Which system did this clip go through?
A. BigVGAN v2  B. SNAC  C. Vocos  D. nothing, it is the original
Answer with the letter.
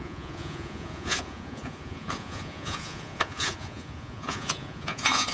C